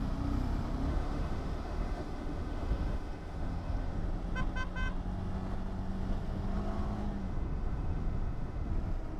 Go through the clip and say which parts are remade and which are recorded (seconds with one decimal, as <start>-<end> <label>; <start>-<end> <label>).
0.0-0.9 recorded; 0.9-4.0 remade; 4.0-7.2 recorded; 7.2-8.7 remade; 8.7-9.2 recorded